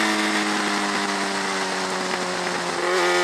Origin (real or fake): real